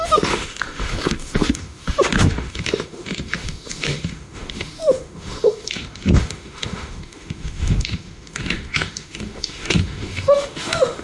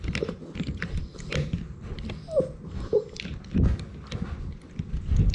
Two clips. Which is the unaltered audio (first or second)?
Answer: second